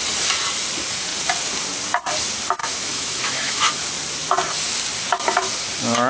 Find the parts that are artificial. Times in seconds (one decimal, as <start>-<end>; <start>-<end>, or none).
2.6-3.7